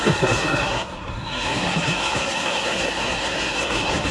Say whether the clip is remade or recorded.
remade